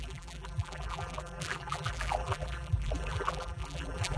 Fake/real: fake